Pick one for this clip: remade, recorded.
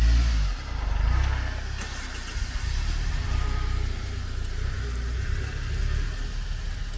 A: recorded